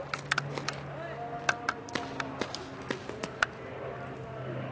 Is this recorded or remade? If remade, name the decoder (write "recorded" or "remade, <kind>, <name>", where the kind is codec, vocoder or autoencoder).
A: recorded